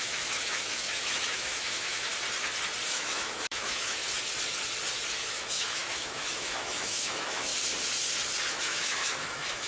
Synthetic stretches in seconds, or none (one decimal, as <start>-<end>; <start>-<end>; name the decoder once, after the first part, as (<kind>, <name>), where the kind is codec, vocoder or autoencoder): 0.0-2.1 (autoencoder, DAC-VAE); 2.9-4.0; 5.2-7.5; 8.5-9.7